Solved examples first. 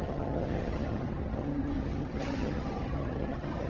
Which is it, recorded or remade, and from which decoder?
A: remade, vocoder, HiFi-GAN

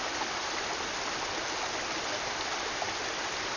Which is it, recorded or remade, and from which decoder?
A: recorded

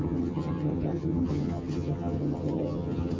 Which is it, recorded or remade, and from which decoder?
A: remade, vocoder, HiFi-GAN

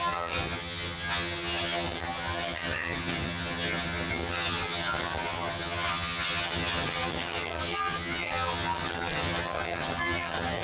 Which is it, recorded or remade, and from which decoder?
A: remade, vocoder, HiFi-GAN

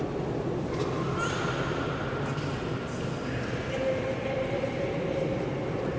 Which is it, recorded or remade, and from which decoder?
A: recorded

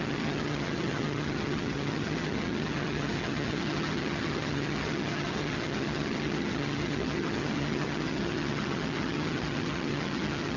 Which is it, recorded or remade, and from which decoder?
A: remade, vocoder, HiFi-GAN